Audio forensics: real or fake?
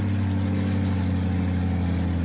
real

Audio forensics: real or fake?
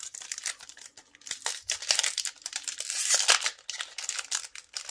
real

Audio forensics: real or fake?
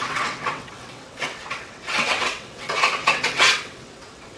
fake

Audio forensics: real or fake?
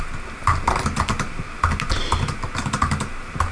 real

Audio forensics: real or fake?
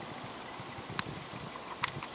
real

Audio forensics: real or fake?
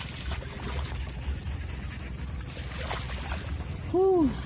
real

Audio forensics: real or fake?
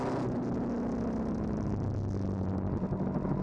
real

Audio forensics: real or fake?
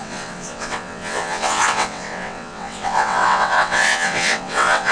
fake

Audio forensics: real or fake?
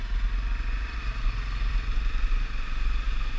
real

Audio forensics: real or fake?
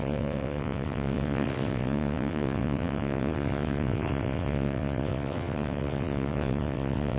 fake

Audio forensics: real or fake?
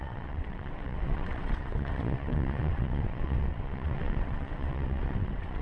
fake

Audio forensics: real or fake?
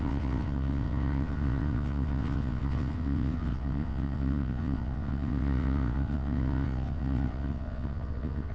fake